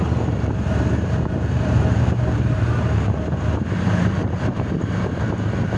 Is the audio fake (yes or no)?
yes